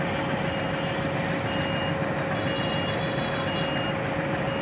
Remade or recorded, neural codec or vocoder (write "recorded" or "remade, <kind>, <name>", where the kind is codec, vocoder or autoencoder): recorded